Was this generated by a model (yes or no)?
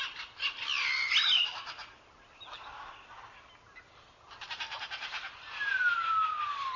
no